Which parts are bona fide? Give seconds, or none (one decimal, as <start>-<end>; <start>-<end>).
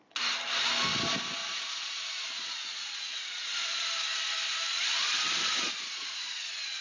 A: 0.0-1.4; 3.9-5.3